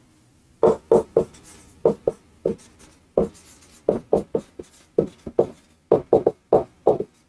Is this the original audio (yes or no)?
yes